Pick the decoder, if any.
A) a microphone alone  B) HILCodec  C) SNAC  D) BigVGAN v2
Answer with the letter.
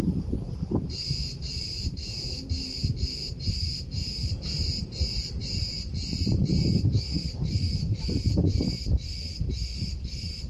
D